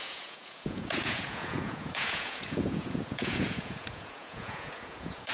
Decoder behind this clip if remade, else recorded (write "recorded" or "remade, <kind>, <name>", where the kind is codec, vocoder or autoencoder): remade, vocoder, Vocos